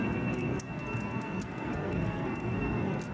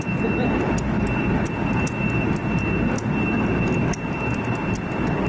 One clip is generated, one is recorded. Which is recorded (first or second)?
second